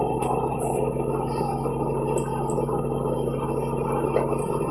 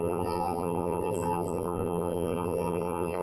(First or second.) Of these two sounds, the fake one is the second